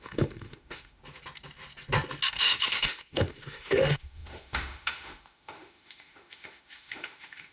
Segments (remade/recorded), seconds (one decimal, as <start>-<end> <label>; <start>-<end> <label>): 0.0-1.0 remade; 1.0-2.3 recorded; 2.3-7.5 remade

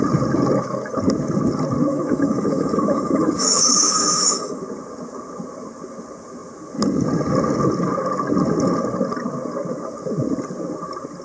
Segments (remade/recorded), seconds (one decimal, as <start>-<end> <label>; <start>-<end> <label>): 0.0-1.9 recorded; 1.9-4.6 remade; 4.6-11.2 recorded

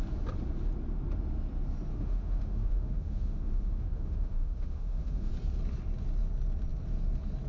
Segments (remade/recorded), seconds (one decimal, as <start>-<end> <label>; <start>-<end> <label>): 0.0-1.9 recorded; 1.9-5.3 remade; 5.3-7.5 recorded

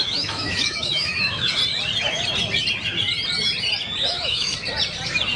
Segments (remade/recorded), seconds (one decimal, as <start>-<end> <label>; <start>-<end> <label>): 0.0-1.6 remade; 1.6-4.1 recorded; 4.1-4.5 remade; 4.5-5.4 recorded